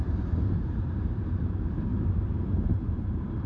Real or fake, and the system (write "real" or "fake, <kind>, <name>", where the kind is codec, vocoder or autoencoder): fake, vocoder, BigVGAN v2